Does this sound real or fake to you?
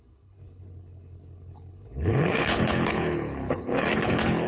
fake